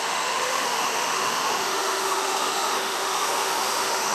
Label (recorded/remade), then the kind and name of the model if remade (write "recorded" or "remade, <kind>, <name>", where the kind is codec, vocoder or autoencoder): remade, autoencoder, DAC-VAE